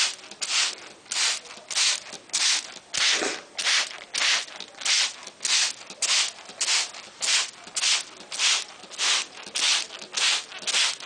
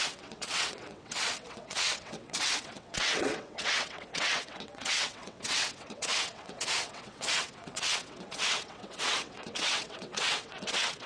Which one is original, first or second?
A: first